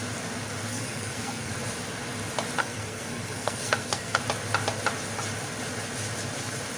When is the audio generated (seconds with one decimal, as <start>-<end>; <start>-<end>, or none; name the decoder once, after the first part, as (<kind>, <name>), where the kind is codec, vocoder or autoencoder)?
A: 0.7-1.5 (codec, SNAC); 2.6-4.2